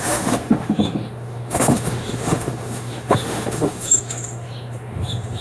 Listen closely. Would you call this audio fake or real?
fake